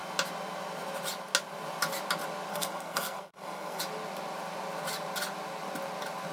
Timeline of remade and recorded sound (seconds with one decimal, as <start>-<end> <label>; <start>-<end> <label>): 0.0-2.5 recorded; 2.5-3.8 remade; 3.8-6.3 recorded